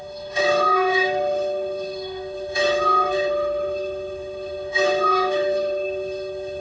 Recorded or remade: remade